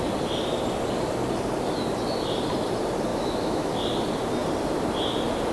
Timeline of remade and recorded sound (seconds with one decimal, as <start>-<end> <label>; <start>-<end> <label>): 0.0-3.1 recorded; 3.1-3.7 remade; 3.7-5.5 recorded